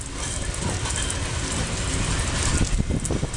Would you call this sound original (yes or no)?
yes